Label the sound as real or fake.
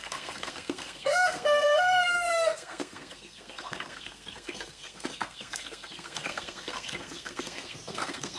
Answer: fake